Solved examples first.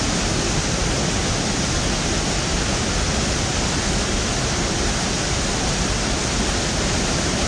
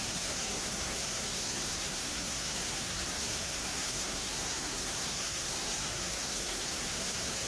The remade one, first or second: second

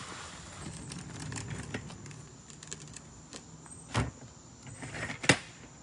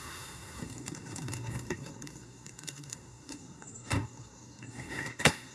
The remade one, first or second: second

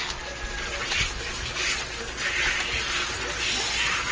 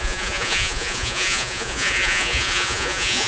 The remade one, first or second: second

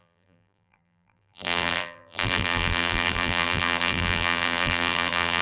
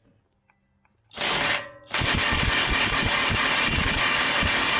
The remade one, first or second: first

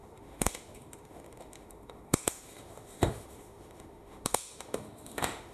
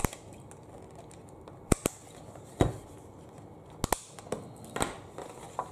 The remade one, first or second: first